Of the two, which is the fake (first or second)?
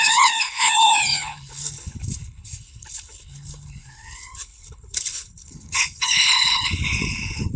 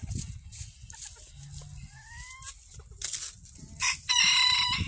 first